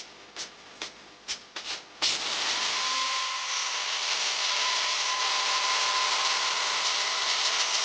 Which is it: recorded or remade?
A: recorded